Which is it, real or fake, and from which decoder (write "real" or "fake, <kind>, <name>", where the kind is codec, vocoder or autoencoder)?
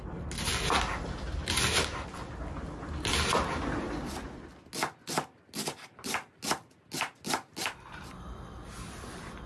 real